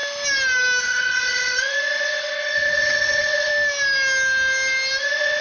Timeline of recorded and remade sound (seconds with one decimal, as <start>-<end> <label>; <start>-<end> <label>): 0.0-0.8 recorded; 0.8-3.5 remade; 3.5-5.0 recorded; 5.0-5.4 remade